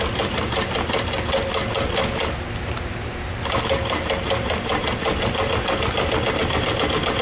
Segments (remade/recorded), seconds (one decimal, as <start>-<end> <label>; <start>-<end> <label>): 0.0-7.2 recorded